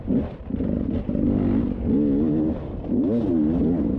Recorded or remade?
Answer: recorded